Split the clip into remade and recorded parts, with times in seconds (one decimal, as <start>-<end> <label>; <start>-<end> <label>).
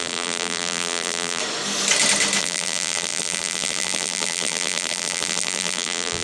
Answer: 0.0-1.4 remade; 1.4-2.4 recorded; 2.4-6.2 remade